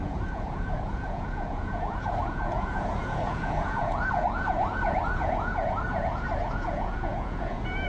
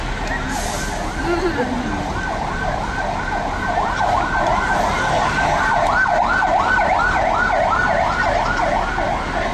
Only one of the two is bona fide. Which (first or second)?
second